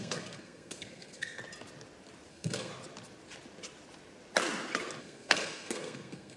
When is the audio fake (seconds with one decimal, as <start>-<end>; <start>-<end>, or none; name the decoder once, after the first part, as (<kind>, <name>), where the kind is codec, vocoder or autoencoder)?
0.0-1.4 (codec, SNAC); 2.3-2.7; 5.0-6.4